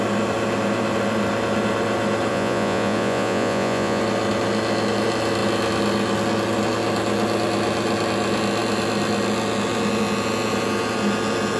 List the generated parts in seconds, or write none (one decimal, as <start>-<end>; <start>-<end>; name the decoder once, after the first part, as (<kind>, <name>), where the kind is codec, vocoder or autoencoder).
2.3-4.0 (vocoder, Vocos)